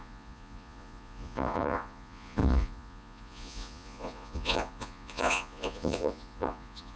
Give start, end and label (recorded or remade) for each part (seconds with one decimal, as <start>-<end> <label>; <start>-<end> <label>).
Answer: 0.0-7.0 remade